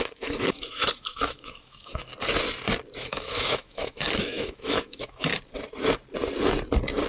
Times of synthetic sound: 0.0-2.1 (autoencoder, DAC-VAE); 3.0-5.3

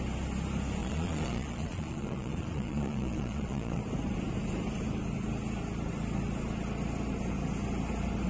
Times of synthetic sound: 0.8-3.8 (vocoder, Vocos)

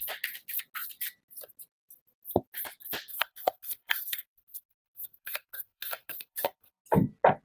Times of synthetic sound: 3.1-6.8 (codec, SNAC)

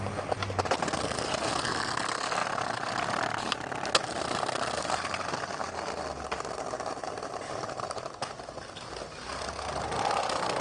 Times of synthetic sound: none

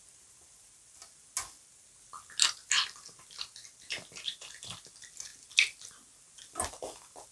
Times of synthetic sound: none